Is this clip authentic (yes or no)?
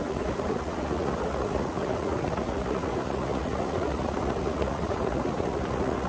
no